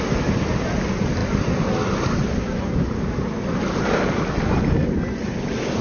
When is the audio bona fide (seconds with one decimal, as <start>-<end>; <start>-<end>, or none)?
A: 0.0-5.8